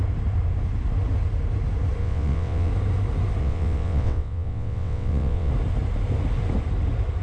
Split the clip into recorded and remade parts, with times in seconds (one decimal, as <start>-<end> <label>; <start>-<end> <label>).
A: 0.0-2.0 recorded; 2.0-2.7 remade; 2.7-3.4 recorded; 3.4-5.5 remade; 5.5-7.2 recorded